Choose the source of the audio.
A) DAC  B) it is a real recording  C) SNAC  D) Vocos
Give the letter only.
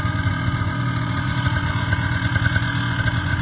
D